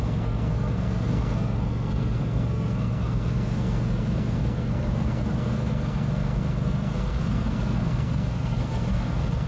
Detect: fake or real fake